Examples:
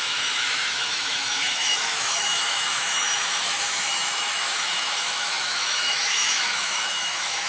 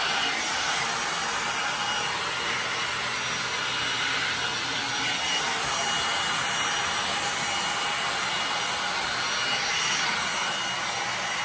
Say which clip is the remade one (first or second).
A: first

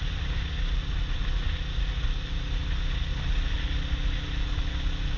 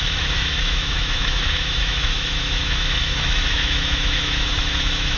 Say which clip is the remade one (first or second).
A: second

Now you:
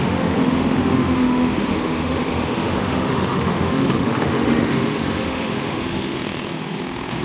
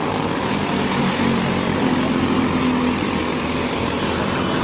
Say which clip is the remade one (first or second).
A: first